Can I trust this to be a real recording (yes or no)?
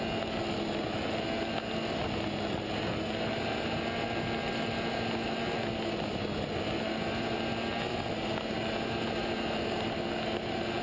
yes